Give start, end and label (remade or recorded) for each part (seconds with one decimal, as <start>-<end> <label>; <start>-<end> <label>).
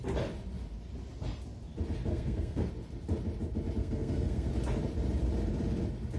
0.0-2.1 recorded; 2.1-2.7 remade; 2.7-3.8 recorded; 3.8-4.5 remade; 4.5-6.2 recorded